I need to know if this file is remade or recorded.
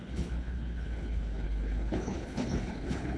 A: remade